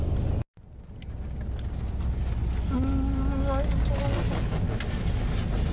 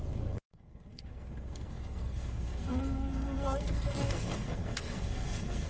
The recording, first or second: first